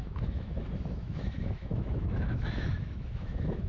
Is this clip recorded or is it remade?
remade